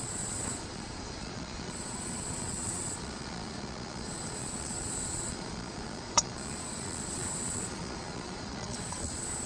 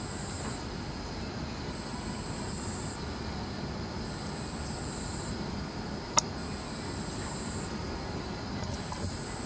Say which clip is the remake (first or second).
first